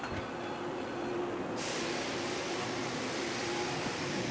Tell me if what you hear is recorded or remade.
recorded